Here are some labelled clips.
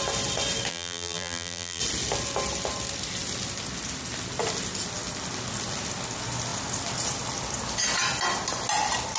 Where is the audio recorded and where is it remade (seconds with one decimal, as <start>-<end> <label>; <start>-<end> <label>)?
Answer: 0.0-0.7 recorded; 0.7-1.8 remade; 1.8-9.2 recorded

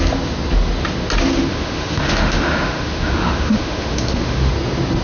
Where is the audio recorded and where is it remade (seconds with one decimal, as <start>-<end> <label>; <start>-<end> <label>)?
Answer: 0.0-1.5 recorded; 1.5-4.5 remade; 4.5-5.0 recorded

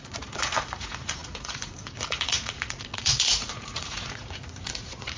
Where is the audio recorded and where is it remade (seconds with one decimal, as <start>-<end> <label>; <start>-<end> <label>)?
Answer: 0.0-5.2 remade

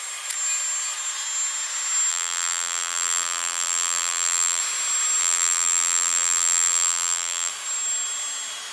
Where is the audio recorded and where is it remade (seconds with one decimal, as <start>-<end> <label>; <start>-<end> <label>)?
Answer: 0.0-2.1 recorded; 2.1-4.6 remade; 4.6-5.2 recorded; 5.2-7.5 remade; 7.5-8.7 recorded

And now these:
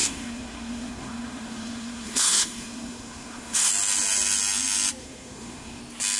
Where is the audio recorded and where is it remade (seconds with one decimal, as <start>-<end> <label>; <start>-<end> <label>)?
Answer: 0.0-3.7 remade; 3.7-5.0 recorded; 5.0-5.8 remade; 5.8-6.2 recorded

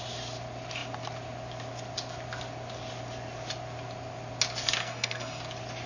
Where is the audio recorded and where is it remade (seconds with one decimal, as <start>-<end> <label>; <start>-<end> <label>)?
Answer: 0.0-4.8 recorded; 4.8-5.4 remade; 5.4-5.9 recorded